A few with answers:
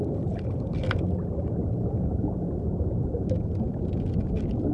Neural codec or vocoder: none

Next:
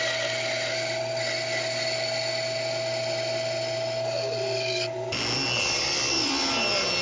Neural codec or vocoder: none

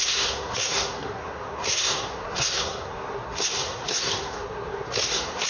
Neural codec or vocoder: codec, SNAC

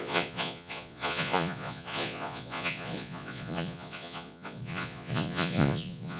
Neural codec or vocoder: vocoder, Vocos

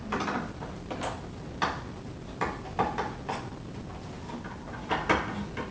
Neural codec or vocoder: none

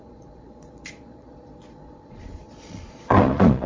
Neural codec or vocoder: vocoder, Vocos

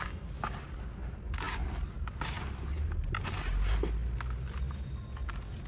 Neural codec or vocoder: none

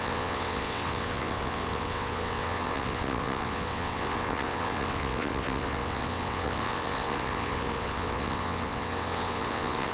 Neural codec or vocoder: vocoder, WaveNeXt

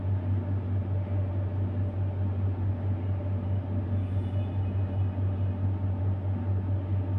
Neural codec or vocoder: none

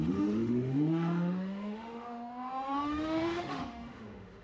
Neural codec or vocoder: autoencoder, DAC-VAE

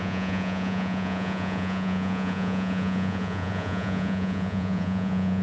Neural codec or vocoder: vocoder, Vocos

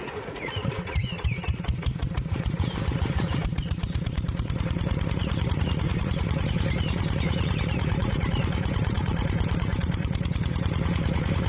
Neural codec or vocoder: vocoder, Vocos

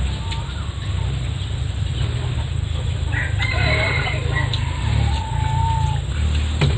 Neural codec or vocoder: none